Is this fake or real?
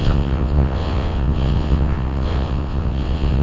fake